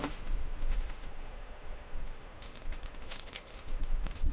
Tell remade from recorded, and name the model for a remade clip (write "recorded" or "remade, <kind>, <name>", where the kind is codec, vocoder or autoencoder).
remade, autoencoder, DAC-VAE